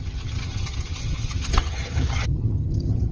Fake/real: fake